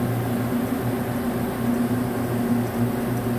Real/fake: real